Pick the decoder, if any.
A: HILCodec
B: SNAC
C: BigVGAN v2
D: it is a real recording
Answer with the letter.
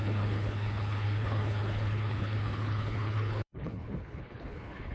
A